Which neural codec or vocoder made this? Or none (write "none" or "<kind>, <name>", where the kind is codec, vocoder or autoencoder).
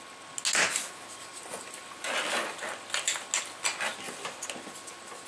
none